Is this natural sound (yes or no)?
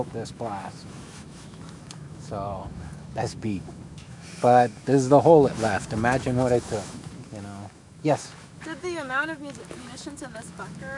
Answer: no